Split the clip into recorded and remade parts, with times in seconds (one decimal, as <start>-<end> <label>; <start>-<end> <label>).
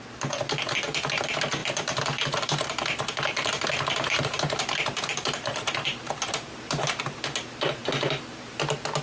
0.0-1.6 recorded; 1.6-6.3 remade; 6.3-7.8 recorded; 7.8-8.4 remade; 8.4-9.0 recorded